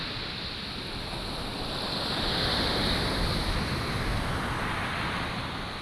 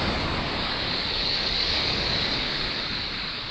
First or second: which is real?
first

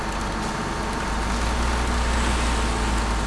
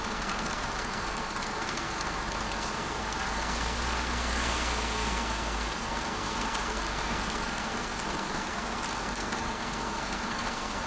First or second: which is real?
first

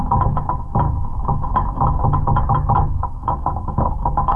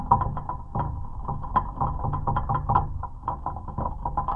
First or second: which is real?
second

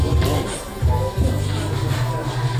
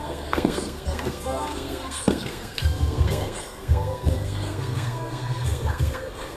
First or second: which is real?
first